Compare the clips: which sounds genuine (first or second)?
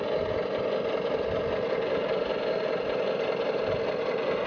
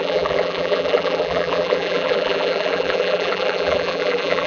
first